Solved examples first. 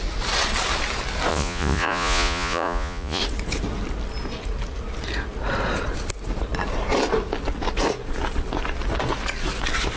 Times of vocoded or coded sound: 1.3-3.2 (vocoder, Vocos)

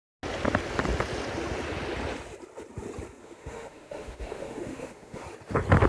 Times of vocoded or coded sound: 3.2-5.2 (autoencoder, DAC-VAE)

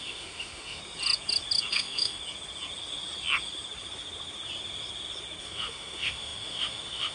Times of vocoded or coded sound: 0.0-0.8 (autoencoder, DAC-VAE); 1.7-2.2; 5.4-7.1

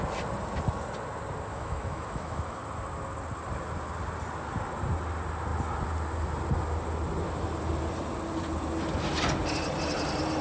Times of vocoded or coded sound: 1.5-2.6 (autoencoder, DAC-VAE)

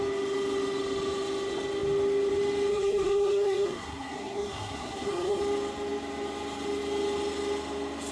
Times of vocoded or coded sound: 2.7-5.4 (codec, SNAC)

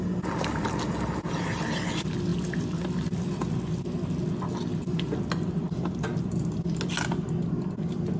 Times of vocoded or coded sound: none

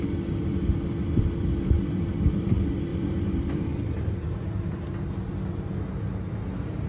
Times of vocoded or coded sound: 2.9-4.9 (vocoder, BigVGAN v2)